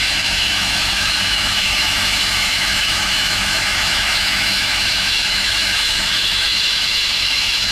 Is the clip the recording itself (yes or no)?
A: no